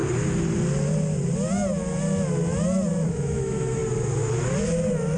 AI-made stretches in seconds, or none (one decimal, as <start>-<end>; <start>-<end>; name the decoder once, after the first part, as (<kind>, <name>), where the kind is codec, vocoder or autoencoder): 3.1-3.8 (autoencoder, DAC-VAE)